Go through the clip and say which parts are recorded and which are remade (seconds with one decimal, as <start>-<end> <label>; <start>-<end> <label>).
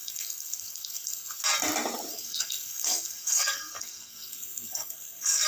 0.0-1.4 remade; 1.4-2.1 recorded; 2.1-5.5 remade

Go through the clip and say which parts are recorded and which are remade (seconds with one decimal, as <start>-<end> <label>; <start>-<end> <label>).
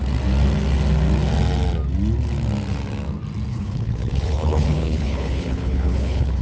0.0-3.5 recorded; 3.5-6.4 remade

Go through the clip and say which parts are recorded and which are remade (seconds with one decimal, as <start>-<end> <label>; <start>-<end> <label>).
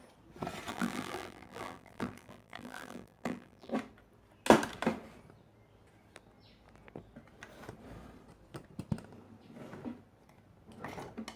0.0-0.7 recorded; 0.7-3.7 remade; 3.7-11.4 recorded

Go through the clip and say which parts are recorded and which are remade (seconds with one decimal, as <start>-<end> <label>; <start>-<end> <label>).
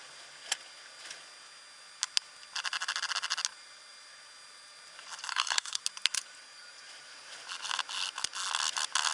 0.0-5.3 recorded; 5.3-5.8 remade; 5.8-9.1 recorded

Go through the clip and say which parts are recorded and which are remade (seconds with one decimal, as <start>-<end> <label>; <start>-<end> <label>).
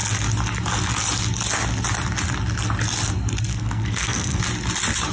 0.0-3.5 recorded; 3.5-4.4 remade; 4.4-5.1 recorded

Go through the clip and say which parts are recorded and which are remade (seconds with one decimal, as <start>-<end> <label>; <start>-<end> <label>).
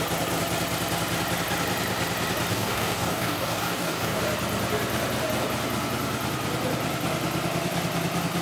0.0-2.5 recorded; 2.5-4.2 remade; 4.2-8.4 recorded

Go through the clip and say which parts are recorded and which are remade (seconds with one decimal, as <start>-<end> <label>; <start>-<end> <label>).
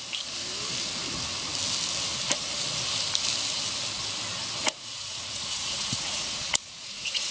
0.0-4.6 recorded; 4.6-7.3 remade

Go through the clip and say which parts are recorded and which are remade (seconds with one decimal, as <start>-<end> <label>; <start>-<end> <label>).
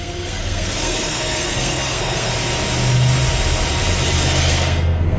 0.0-2.3 remade; 2.3-4.4 recorded; 4.4-5.2 remade